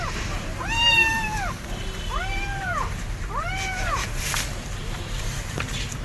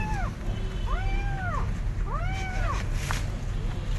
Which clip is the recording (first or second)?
second